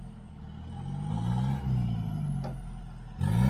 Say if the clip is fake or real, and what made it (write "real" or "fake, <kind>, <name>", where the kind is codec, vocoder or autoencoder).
real